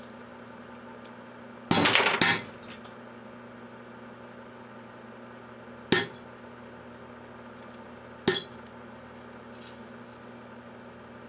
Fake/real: real